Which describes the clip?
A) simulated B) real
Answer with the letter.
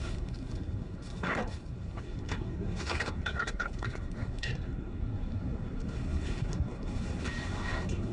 A